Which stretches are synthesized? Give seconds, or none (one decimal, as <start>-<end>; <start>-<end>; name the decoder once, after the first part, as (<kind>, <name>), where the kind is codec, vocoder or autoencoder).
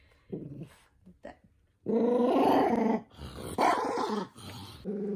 none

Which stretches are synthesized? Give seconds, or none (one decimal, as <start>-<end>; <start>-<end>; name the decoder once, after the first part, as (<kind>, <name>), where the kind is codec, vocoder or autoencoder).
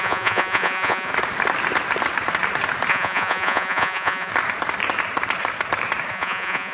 0.0-1.1 (vocoder, Vocos); 2.9-4.3; 6.1-6.7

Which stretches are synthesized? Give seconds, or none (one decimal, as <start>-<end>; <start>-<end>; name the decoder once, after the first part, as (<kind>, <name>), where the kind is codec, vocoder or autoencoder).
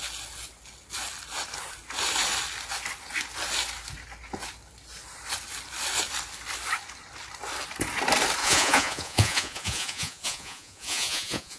8.4-11.6 (vocoder, Vocos)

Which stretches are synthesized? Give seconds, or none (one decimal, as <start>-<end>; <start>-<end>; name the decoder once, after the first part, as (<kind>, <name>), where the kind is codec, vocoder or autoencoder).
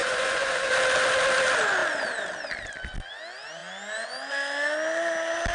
0.0-0.7 (vocoder, Vocos)